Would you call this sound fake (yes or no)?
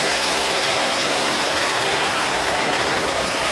yes